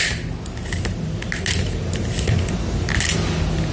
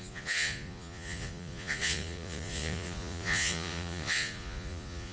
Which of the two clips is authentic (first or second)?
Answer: first